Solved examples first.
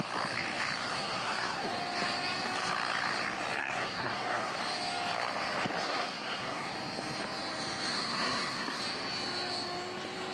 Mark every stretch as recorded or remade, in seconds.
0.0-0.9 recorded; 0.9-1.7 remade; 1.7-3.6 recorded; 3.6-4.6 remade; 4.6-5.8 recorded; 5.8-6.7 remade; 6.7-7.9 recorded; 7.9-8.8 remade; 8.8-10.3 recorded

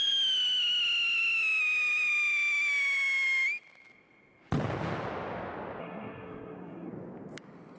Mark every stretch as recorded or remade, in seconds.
0.0-5.8 recorded; 5.8-6.9 remade; 6.9-7.8 recorded

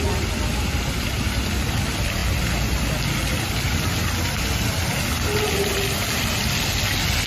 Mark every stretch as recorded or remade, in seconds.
0.0-7.3 recorded

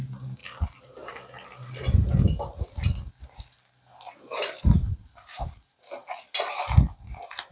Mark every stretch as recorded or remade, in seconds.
0.0-0.4 remade; 0.4-4.6 recorded; 4.6-6.0 remade; 6.0-7.5 recorded